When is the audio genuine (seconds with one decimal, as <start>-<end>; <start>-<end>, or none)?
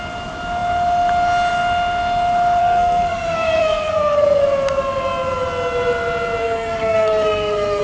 0.0-2.6; 4.4-6.4